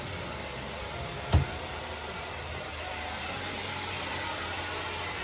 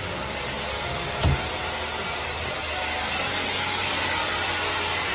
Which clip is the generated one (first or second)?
first